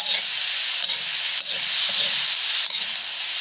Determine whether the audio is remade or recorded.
recorded